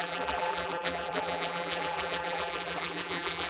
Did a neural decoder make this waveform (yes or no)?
yes